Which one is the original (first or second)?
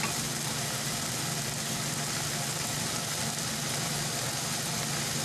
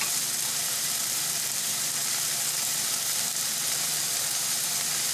first